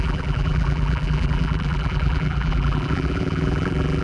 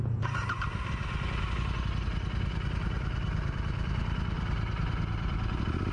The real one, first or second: second